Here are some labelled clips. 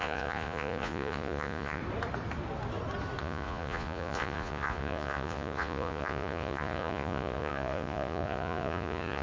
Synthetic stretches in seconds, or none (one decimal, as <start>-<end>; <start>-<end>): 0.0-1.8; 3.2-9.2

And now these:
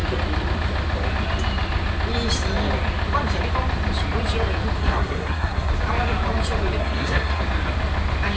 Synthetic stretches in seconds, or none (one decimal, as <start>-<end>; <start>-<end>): 4.8-5.7; 6.8-7.4

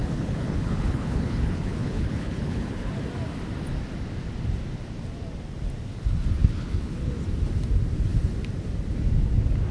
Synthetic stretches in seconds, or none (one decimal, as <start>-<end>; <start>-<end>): 0.0-2.9; 6.4-7.1